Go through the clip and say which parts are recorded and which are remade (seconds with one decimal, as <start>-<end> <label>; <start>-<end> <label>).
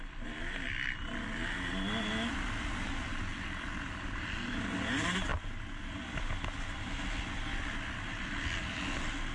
0.0-9.3 recorded